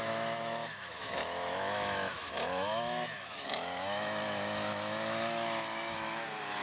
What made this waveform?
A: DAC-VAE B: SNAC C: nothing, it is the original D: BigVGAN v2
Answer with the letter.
A